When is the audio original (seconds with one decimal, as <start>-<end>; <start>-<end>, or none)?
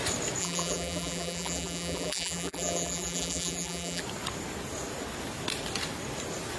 0.0-0.4; 4.0-6.6